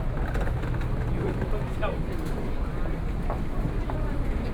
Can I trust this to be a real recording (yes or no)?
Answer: yes